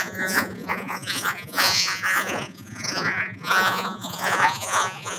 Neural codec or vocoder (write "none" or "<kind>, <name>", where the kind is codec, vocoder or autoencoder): vocoder, Vocos